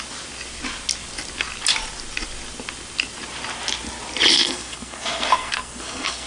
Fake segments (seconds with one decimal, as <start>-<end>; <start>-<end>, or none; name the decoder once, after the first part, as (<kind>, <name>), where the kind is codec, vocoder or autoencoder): 4.3-6.3 (codec, SNAC)